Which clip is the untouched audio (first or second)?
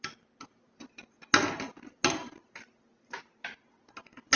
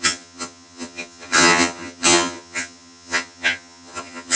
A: first